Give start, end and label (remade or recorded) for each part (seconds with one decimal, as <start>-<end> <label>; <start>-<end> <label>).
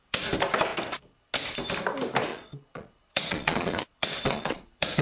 0.0-2.3 recorded; 2.3-5.0 remade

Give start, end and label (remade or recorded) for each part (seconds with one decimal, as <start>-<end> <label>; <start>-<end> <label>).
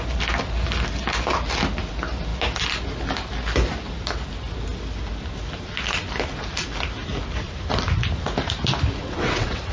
0.0-9.0 recorded; 9.0-9.7 remade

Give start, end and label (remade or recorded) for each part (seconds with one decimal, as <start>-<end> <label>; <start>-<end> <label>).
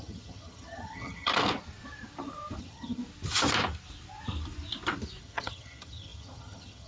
0.0-1.3 remade; 1.3-2.6 recorded; 2.6-3.0 remade; 3.0-5.2 recorded; 5.2-6.9 remade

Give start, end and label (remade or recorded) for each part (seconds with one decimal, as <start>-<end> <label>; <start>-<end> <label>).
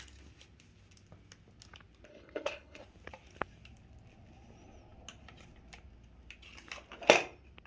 0.0-2.1 recorded; 2.1-2.8 remade; 2.8-7.7 recorded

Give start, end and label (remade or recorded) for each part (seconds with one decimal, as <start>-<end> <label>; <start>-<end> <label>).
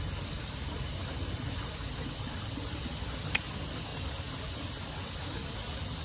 0.0-6.0 recorded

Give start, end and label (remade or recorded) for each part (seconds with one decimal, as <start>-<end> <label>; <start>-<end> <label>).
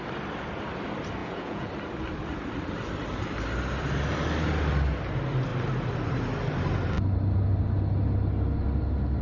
0.0-1.2 recorded; 1.2-1.7 remade; 1.7-9.2 recorded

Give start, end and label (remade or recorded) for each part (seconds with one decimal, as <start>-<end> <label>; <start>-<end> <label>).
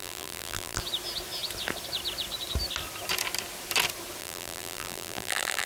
0.0-0.8 remade; 0.8-4.2 recorded; 4.2-5.7 remade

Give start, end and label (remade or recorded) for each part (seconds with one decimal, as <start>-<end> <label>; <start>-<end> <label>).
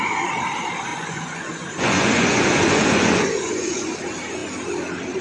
0.0-0.9 recorded; 0.9-4.0 remade; 4.0-5.2 recorded